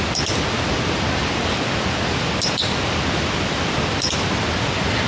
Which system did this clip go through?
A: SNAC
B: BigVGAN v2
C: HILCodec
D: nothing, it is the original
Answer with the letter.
D